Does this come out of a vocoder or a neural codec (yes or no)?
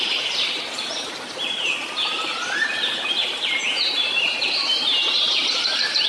yes